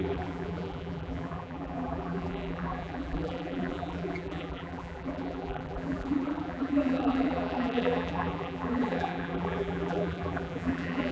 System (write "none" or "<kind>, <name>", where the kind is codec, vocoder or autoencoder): vocoder, BigVGAN v2